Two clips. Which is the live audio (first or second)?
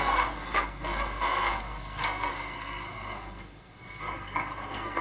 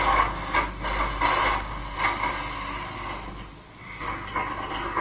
second